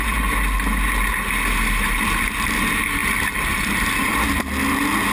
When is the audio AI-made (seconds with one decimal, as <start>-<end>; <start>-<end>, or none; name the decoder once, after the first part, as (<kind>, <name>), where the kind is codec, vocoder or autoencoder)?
none